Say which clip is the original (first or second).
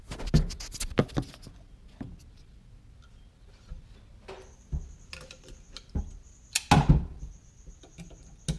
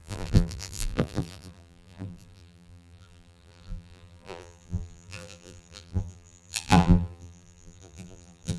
first